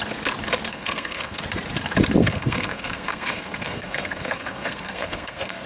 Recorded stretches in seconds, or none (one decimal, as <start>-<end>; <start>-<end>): 0.0-0.7; 1.4-2.2